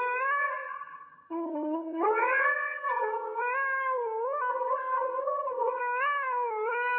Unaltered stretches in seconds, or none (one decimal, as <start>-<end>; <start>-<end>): 0.0-0.4; 3.4-4.5; 5.8-7.0

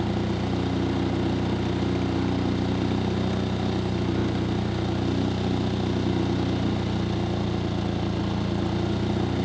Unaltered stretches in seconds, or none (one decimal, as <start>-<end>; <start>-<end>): 0.0-9.4

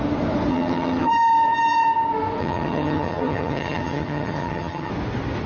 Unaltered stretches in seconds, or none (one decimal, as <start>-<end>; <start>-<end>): 0.0-0.5; 1.1-2.4; 4.9-5.5

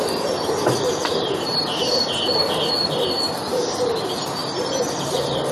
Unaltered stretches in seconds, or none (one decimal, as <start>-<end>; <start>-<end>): 1.1-3.5; 4.4-5.5

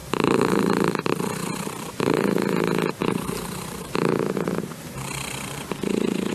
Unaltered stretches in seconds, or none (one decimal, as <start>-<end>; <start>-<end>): 0.9-1.4; 2.1-3.0

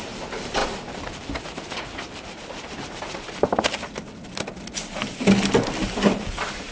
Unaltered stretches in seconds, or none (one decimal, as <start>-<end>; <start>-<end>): 0.6-1.4; 2.4-6.3